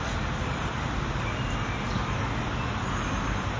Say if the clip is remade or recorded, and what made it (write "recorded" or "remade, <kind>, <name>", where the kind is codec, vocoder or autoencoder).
recorded